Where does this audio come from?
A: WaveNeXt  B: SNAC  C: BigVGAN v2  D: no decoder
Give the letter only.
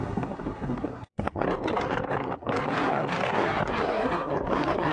B